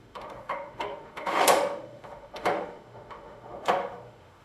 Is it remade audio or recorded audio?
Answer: remade